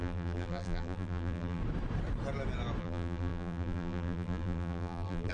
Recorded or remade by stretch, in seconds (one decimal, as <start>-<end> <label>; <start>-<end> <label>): 0.0-1.6 remade; 1.6-2.8 recorded; 2.8-5.3 remade